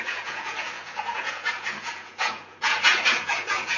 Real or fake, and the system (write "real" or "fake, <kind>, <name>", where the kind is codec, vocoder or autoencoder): fake, vocoder, Vocos